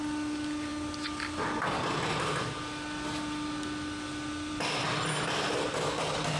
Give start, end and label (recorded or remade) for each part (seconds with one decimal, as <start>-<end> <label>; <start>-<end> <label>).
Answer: 0.0-6.4 recorded